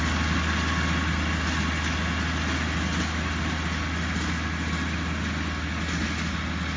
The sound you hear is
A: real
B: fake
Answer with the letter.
A